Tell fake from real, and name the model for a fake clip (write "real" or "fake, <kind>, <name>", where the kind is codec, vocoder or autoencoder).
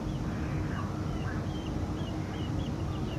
real